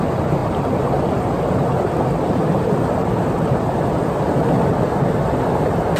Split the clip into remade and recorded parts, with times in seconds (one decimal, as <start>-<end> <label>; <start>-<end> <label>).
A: 0.0-6.0 recorded